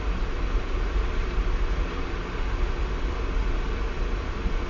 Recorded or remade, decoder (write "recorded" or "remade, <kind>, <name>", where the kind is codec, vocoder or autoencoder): recorded